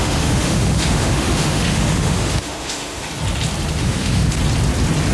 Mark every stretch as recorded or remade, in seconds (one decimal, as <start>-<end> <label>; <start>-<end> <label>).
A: 0.0-3.1 remade; 3.1-3.8 recorded; 3.8-4.3 remade; 4.3-5.1 recorded